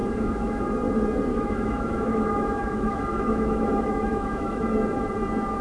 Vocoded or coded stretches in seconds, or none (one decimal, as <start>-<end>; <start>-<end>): 0.0-0.6; 1.3-4.7